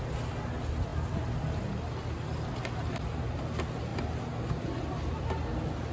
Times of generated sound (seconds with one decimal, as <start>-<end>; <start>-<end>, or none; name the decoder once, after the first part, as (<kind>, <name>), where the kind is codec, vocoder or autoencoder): none

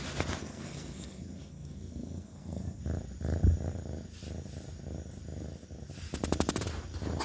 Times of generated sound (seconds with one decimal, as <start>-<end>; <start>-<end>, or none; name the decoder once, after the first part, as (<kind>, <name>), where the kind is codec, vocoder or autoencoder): 0.4-2.8 (codec, SNAC)

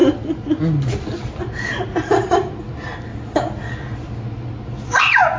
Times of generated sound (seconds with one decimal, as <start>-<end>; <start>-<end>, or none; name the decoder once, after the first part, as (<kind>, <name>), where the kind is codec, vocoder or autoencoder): 1.9-2.5 (vocoder, BigVGAN v2)